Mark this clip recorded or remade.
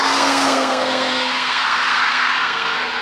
remade